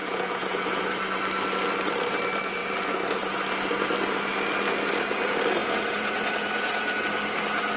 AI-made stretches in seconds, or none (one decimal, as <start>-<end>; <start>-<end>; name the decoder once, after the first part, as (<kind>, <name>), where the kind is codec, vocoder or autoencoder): 0.0-0.8 (vocoder, Vocos); 5.6-7.0